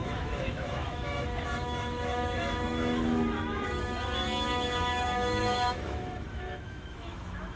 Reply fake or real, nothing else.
fake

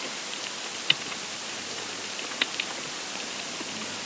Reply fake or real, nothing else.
real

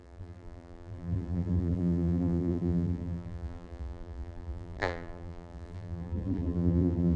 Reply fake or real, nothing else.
fake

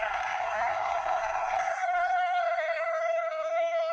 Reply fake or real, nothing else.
fake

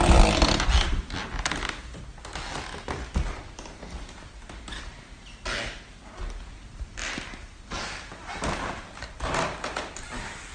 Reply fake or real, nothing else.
real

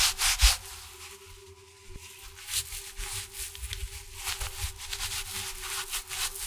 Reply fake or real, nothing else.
real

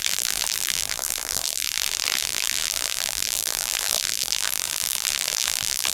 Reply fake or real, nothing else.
fake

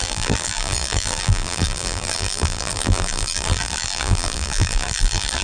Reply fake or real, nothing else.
fake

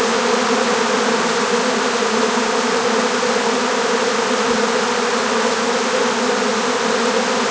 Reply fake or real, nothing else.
real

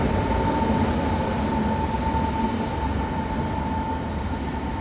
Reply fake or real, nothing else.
real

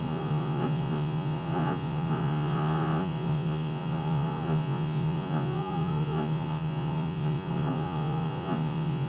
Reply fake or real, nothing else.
fake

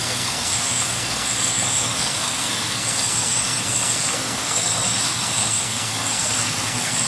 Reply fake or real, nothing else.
fake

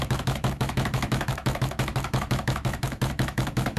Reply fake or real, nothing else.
fake